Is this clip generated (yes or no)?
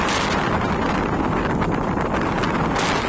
no